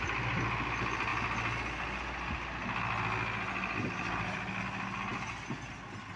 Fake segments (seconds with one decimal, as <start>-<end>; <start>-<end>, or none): none